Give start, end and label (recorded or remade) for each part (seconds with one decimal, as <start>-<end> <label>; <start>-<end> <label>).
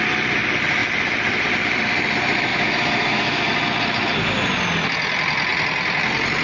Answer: 0.0-2.5 recorded; 2.5-3.5 remade; 3.5-6.4 recorded